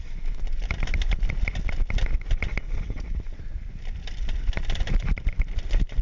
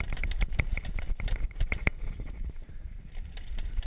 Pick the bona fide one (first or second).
first